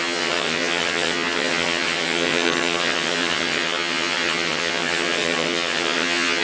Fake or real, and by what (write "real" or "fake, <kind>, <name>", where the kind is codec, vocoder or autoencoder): fake, vocoder, HiFi-GAN